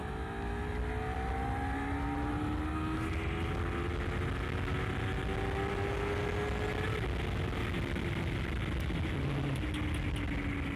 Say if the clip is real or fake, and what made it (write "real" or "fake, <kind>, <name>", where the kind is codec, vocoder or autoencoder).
real